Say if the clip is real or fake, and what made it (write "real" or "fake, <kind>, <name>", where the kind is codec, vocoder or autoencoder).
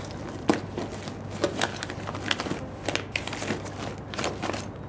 real